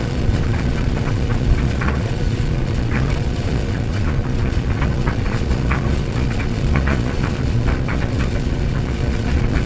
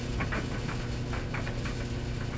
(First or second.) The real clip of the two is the second